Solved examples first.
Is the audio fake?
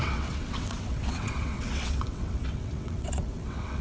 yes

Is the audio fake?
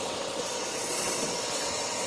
yes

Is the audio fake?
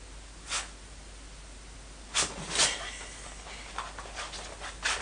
no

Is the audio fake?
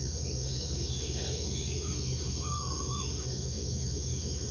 yes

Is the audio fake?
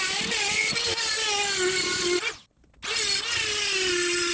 no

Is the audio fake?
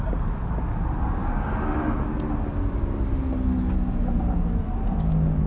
no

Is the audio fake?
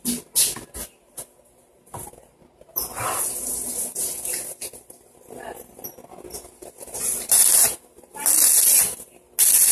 no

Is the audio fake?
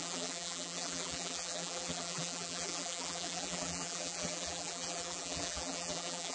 yes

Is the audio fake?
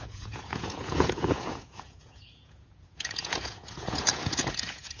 yes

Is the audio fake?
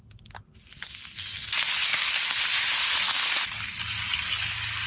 no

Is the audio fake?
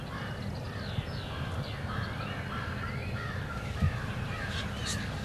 no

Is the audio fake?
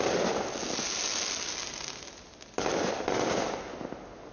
no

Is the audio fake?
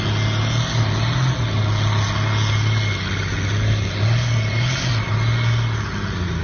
no